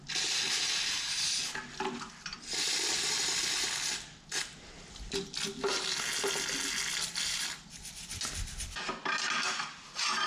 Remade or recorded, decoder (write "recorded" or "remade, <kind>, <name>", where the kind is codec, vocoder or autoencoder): recorded